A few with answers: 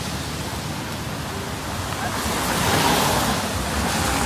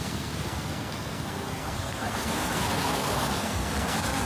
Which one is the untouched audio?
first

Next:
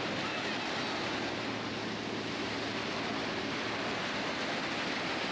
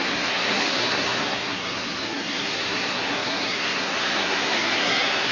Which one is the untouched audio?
first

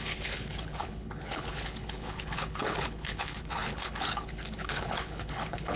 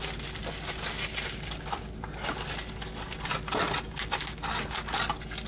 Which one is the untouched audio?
second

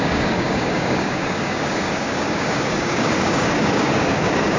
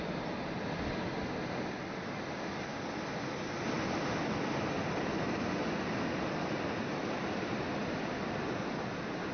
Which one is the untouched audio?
second